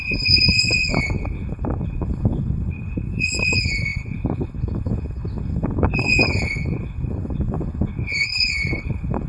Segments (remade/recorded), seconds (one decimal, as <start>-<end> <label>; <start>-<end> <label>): 0.0-9.3 remade